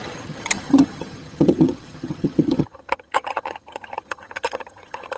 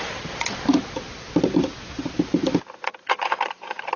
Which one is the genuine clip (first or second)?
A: second